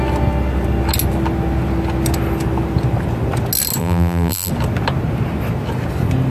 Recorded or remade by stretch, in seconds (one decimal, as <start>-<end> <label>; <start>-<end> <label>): 0.0-3.8 recorded; 3.8-4.5 remade; 4.5-6.3 recorded